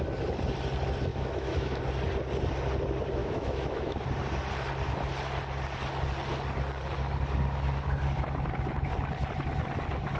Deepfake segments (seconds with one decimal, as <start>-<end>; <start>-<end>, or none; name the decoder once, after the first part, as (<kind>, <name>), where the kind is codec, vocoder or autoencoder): 1.1-1.8 (autoencoder, DAC-VAE); 3.2-4.0